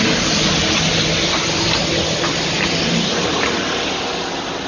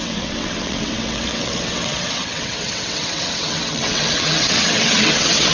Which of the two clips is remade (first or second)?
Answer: second